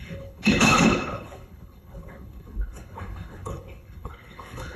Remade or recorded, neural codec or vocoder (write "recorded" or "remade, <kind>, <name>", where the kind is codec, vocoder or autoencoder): remade, codec, HILCodec